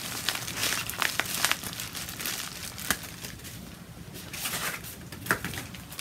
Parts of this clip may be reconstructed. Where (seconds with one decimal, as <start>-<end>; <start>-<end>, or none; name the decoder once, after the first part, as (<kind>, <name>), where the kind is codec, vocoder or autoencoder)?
none